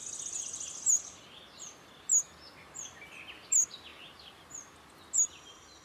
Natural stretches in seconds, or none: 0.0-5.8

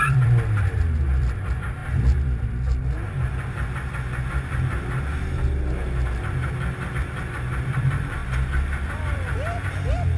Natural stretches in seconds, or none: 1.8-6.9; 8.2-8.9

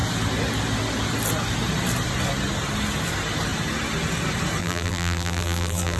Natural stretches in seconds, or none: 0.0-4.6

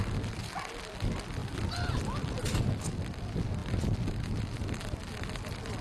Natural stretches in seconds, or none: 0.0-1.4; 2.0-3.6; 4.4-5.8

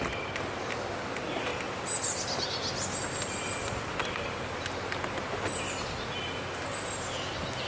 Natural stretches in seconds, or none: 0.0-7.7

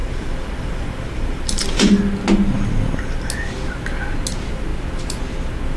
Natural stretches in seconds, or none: 2.0-5.8

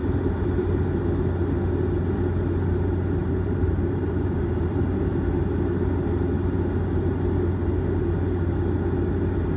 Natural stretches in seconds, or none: 0.8-3.2; 5.0-9.6

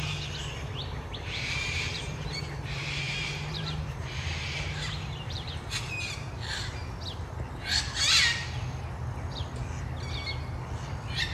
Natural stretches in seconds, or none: 0.0-0.8; 5.9-11.3